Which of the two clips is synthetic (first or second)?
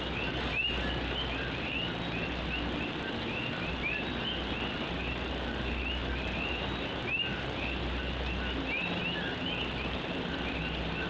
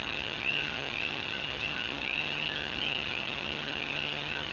second